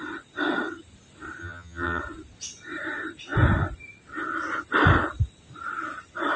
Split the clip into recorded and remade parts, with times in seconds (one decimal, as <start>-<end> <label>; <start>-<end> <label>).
0.0-1.4 recorded; 1.4-2.0 remade; 2.0-6.4 recorded